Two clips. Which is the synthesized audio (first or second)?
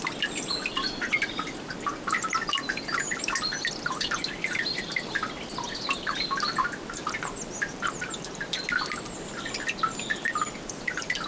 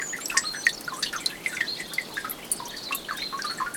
first